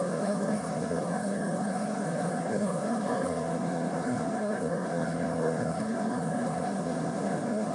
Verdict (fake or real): fake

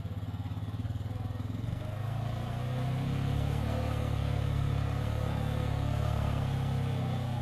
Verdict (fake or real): fake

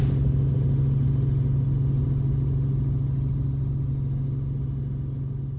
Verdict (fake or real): real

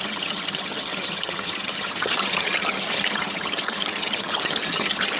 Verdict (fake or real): fake